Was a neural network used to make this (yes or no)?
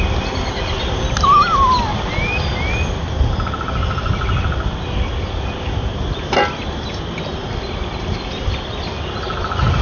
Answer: no